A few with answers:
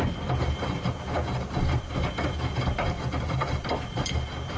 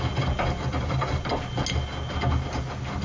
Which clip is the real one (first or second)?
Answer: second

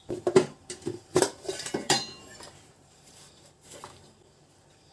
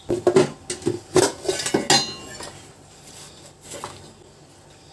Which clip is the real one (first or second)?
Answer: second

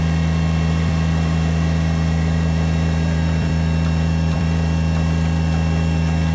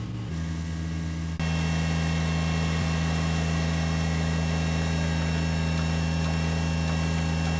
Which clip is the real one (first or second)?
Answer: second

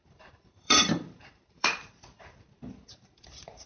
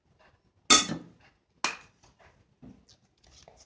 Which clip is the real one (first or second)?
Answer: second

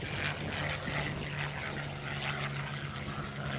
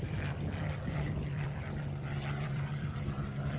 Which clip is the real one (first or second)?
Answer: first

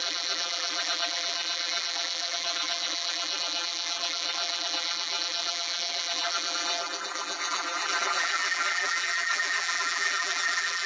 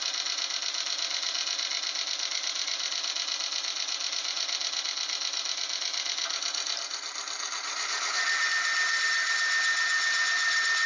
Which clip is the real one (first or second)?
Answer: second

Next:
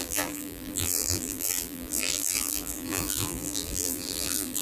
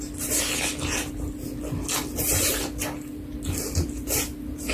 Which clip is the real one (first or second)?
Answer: second